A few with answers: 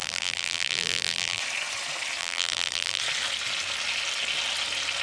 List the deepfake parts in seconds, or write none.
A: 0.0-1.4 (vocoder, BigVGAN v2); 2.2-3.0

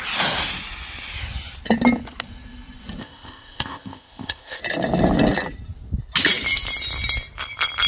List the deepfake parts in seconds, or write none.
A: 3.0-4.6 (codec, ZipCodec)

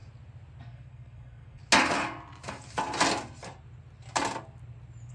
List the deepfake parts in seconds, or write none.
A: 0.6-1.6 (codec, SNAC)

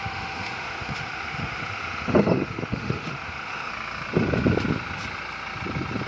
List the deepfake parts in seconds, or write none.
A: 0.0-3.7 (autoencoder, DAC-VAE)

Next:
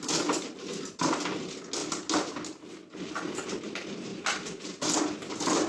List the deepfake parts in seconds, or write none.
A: none

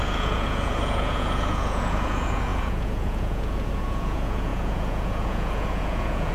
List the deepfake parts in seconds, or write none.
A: 0.0-6.3 (vocoder, Vocos)

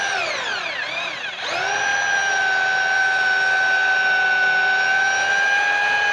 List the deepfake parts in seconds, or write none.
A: none